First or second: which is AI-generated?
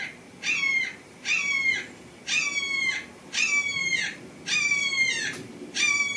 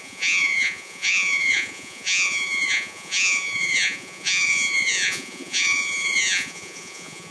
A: second